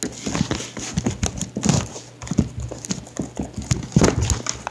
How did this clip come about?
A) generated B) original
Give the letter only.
B